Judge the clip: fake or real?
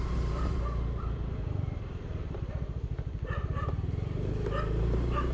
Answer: fake